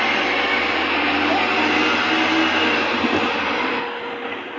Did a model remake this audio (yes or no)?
no